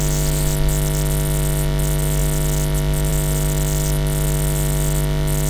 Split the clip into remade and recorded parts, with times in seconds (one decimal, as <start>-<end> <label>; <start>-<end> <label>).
0.0-5.5 recorded